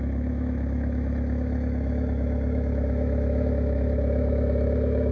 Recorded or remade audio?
remade